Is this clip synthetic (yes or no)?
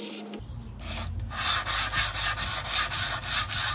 no